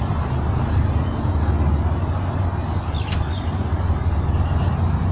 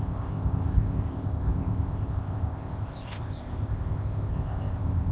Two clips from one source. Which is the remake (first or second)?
second